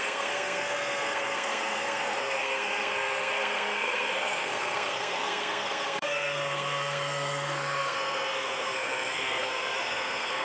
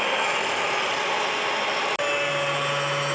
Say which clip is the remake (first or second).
first